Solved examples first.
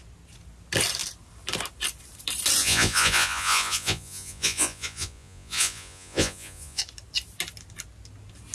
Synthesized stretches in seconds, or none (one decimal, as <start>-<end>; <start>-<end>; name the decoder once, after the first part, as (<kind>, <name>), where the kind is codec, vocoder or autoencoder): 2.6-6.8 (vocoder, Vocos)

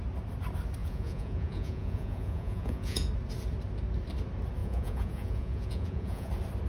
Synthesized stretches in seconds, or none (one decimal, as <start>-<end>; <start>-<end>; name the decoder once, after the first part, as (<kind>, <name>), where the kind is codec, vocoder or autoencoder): 0.8-3.1 (vocoder, Vocos); 4.6-6.3

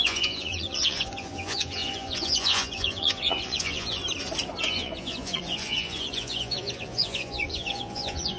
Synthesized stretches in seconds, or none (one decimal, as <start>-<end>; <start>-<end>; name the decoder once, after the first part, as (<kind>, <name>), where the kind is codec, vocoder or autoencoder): 0.0-4.0 (vocoder, Vocos); 4.6-8.4